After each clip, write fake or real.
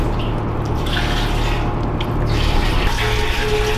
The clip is real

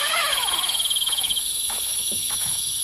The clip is fake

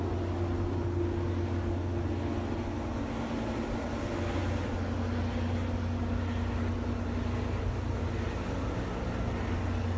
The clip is real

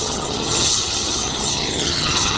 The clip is fake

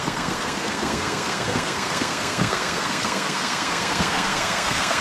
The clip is fake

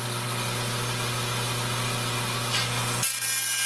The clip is real